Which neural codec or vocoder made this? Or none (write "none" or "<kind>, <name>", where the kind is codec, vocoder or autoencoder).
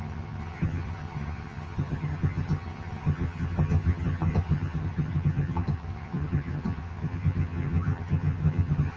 vocoder, HiFi-GAN